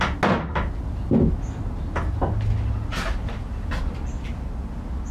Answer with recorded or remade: recorded